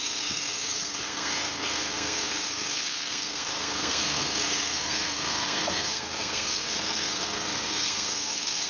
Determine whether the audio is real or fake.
fake